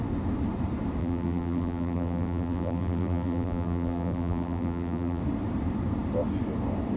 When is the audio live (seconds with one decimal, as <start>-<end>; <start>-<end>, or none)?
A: 0.0-1.0; 5.2-7.0